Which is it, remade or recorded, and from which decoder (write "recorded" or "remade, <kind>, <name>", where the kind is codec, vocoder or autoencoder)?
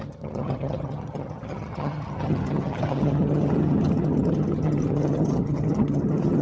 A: remade, vocoder, HiFi-GAN